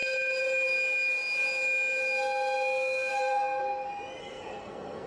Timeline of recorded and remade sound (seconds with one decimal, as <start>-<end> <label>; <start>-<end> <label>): 0.0-3.1 recorded; 3.1-3.6 remade; 3.6-4.2 recorded; 4.2-5.1 remade